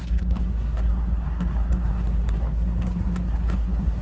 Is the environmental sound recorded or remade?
remade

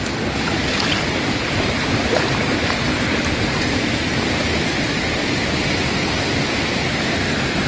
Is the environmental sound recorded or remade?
recorded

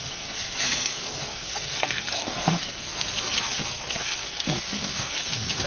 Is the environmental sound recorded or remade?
remade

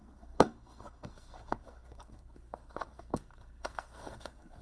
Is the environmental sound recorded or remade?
remade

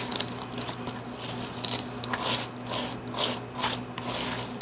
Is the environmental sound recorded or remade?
recorded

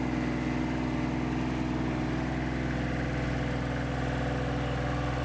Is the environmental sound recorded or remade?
recorded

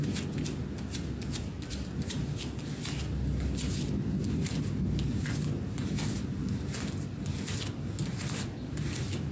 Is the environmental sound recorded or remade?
recorded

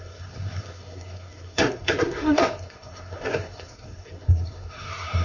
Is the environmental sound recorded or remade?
remade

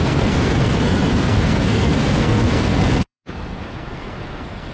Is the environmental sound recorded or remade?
remade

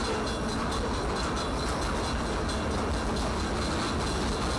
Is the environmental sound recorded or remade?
recorded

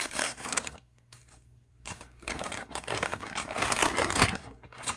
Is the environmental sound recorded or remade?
remade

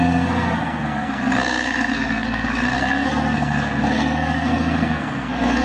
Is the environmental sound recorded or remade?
remade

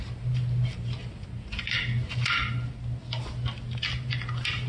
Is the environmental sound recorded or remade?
recorded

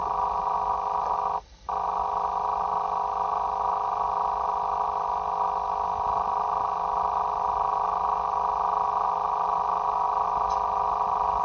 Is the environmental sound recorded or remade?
recorded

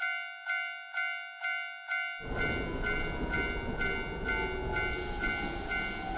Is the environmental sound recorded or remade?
recorded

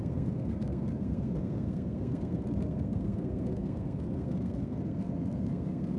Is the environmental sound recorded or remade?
remade